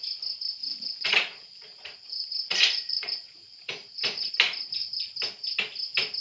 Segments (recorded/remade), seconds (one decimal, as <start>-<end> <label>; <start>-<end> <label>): 0.0-0.6 recorded; 0.6-4.3 remade; 4.3-6.2 recorded